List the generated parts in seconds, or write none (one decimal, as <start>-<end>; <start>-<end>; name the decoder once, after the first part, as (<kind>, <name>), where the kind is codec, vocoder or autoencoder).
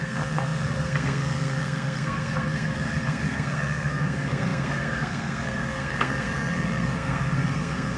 0.0-8.0 (codec, SNAC)